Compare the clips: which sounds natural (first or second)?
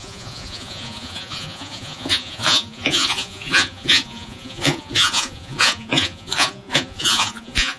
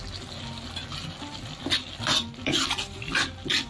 second